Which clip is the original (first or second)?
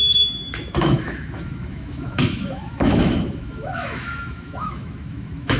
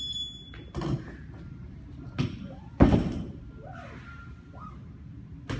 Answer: second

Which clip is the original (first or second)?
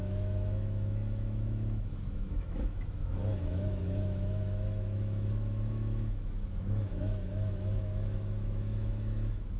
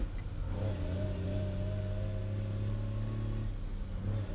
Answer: second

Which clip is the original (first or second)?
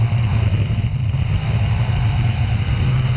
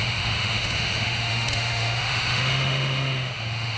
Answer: first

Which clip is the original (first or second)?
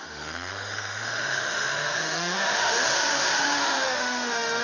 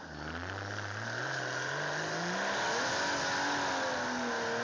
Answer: second